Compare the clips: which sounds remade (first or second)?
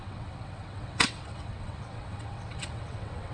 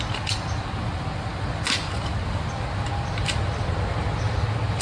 first